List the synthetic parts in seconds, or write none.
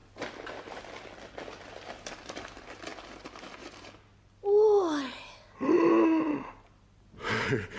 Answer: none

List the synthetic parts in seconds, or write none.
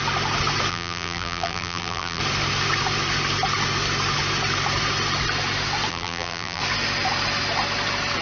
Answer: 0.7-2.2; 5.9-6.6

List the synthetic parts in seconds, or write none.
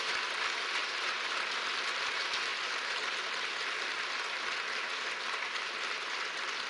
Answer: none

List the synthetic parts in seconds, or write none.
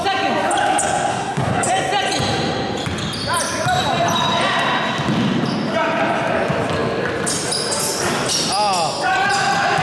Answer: 1.1-1.7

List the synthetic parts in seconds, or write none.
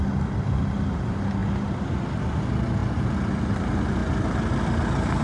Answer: 0.0-2.8; 3.5-4.0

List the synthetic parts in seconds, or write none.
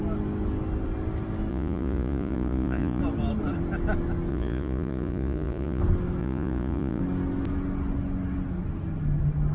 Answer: 1.5-3.0; 4.3-5.8; 6.2-7.0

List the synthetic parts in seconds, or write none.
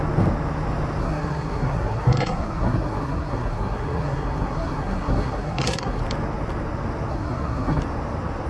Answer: 1.0-6.0; 7.1-7.8